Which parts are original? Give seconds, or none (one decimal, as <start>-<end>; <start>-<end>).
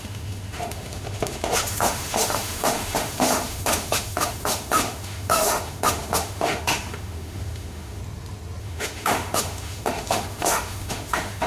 8.0-8.6